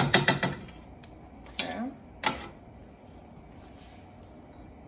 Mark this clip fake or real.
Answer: real